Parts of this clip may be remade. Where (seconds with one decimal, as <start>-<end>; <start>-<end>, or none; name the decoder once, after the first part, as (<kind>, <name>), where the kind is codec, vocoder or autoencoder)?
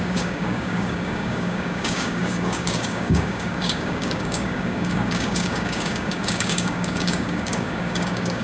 0.0-8.4 (codec, DAC)